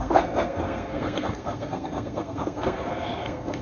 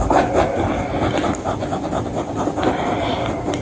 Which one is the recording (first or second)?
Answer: second